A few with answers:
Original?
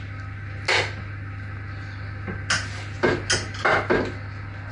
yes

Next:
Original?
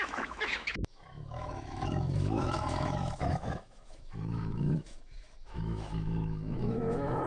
no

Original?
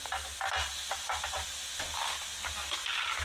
yes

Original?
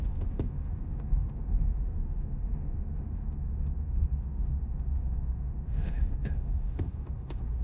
no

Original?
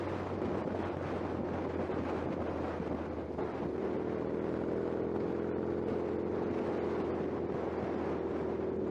yes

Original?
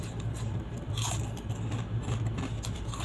yes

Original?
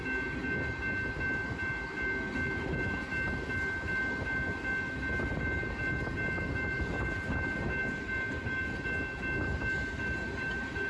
yes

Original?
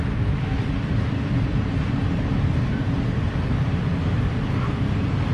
yes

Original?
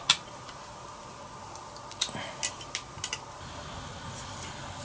yes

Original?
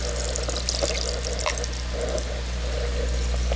yes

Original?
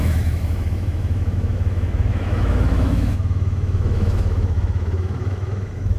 no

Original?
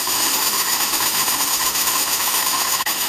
no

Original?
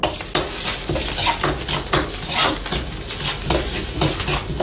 yes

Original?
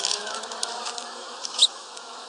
no